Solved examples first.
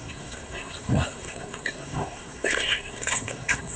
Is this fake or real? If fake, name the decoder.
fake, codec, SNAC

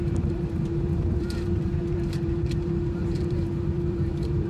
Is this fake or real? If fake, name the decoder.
fake, vocoder, BigVGAN v2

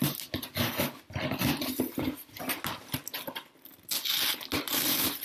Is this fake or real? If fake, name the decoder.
real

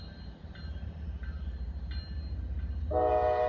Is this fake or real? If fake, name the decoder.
real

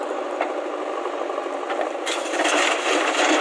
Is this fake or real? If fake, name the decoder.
real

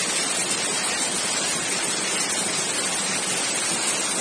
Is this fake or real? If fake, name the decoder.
real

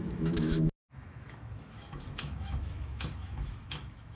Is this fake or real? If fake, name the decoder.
fake, autoencoder, DAC-VAE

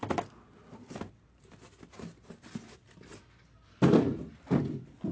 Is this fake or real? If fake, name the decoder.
fake, vocoder, BigVGAN v2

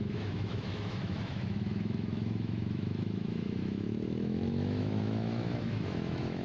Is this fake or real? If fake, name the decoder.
fake, autoencoder, DAC-VAE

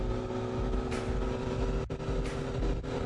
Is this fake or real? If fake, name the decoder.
real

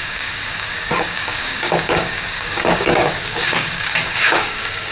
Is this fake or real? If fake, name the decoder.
fake, codec, DAC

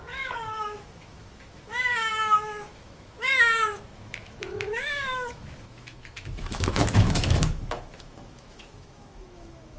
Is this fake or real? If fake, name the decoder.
fake, autoencoder, DAC-VAE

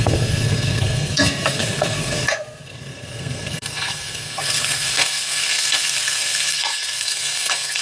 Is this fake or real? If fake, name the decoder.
fake, codec, SNAC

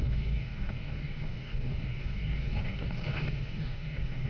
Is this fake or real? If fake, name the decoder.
fake, codec, DAC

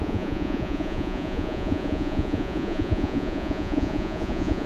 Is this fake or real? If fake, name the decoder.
fake, vocoder, Vocos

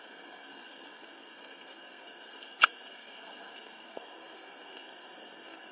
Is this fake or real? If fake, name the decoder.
fake, codec, SNAC